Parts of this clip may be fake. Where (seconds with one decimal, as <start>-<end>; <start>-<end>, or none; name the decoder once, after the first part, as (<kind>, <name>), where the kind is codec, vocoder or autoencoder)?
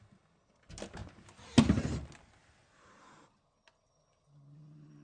none